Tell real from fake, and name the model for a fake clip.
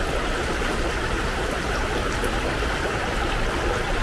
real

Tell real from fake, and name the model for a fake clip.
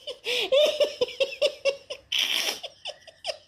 real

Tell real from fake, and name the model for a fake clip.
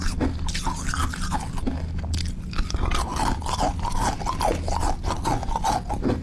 real